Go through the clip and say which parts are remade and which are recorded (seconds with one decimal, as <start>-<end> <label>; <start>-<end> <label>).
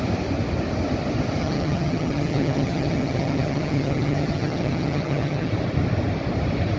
0.0-1.4 recorded; 1.4-5.5 remade; 5.5-6.8 recorded